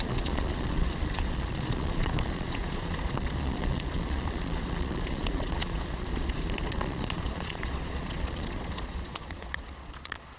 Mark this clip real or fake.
fake